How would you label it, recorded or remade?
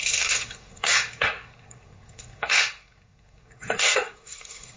remade